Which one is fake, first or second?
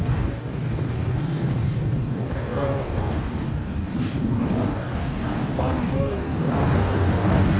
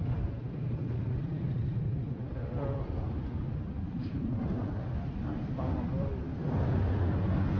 first